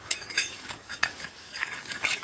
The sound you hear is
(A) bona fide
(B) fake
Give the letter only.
B